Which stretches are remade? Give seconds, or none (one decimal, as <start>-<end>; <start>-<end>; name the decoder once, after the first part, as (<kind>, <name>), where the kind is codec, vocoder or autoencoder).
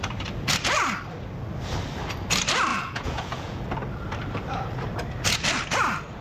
2.7-3.6 (vocoder, Vocos)